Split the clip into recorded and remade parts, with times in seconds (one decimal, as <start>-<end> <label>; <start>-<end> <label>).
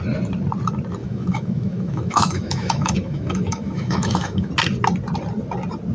0.0-1.0 recorded; 1.0-4.5 remade; 4.5-5.9 recorded